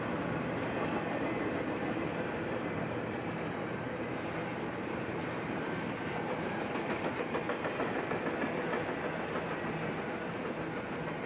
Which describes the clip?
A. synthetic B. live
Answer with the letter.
B